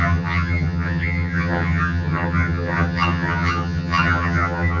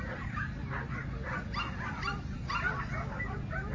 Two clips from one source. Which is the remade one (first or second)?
first